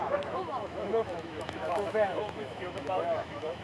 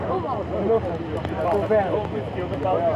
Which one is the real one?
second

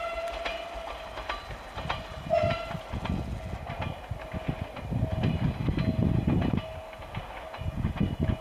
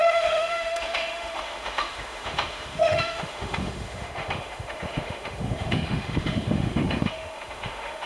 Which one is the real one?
first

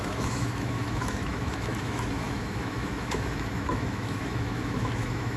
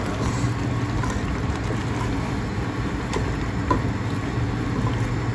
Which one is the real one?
second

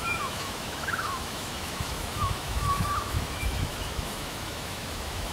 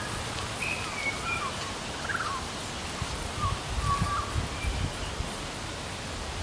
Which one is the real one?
second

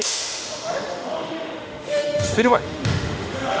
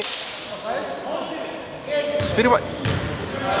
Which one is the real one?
second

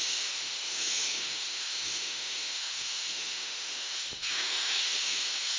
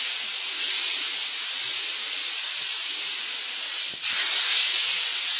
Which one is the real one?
second